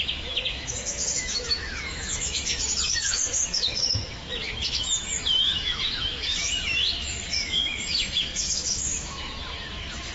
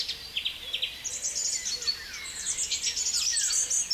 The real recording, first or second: second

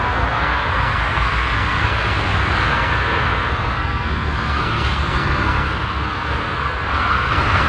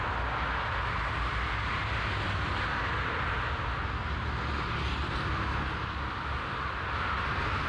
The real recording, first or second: second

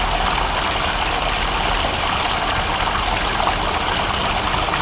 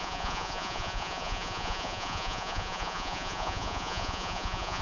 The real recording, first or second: first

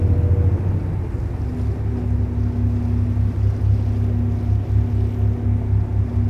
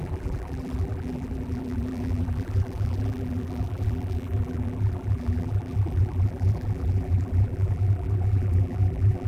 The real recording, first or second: first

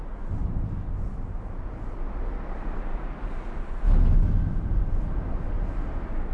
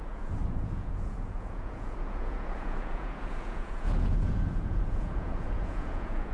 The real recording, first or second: first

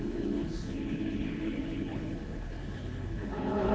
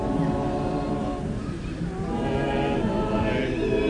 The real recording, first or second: second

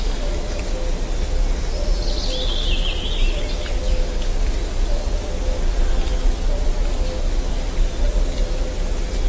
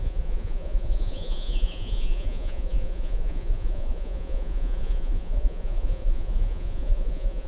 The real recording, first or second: first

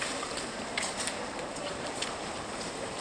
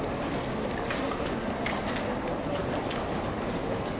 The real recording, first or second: second